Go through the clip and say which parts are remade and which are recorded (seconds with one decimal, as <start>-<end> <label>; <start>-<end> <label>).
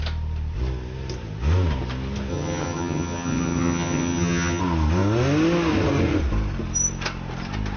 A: 0.0-2.3 recorded; 2.3-4.6 remade; 4.6-7.8 recorded